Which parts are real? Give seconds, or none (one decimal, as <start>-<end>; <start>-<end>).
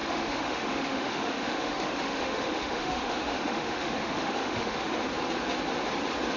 4.9-6.4